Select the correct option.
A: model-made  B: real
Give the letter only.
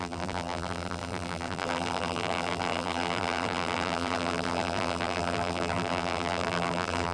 A